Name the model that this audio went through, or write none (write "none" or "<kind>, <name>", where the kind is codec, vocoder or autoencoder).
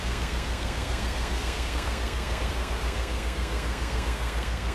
codec, SNAC